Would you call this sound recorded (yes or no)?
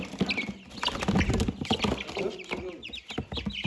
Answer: yes